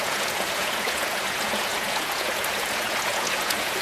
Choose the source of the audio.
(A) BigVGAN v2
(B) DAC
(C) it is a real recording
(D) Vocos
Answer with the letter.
D